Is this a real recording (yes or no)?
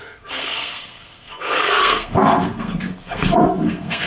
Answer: no